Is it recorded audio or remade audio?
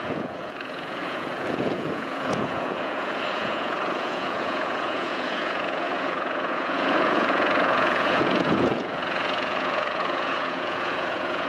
remade